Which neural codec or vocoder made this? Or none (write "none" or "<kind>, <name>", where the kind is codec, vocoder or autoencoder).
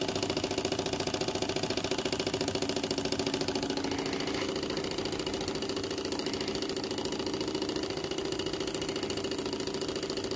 none